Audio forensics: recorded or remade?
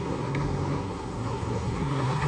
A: remade